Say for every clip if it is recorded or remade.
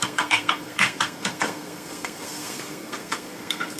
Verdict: remade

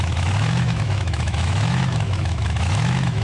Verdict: remade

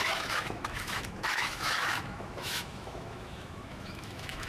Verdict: remade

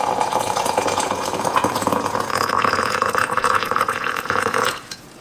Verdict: remade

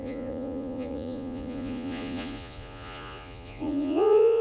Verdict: remade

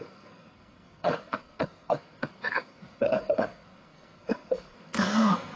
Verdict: remade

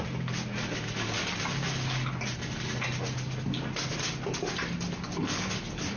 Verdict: recorded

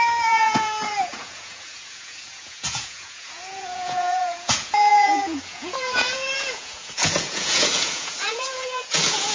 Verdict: remade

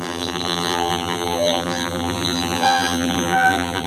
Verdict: remade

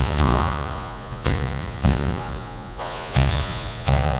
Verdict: remade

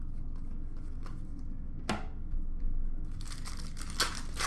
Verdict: recorded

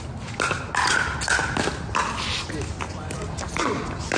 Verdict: recorded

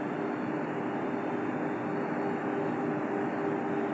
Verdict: recorded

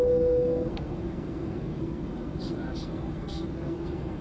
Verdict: remade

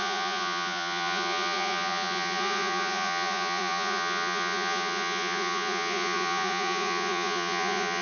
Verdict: remade